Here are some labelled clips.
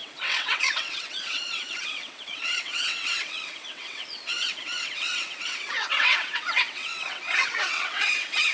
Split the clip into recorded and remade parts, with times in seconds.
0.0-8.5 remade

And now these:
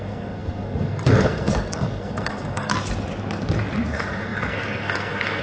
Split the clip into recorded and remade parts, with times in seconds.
0.0-2.7 remade; 2.7-3.9 recorded; 3.9-5.4 remade